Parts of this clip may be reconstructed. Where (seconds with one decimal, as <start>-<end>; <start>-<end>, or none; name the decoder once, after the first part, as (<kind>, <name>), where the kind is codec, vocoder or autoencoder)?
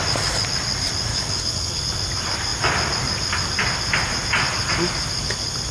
1.1-1.8 (codec, HILCodec)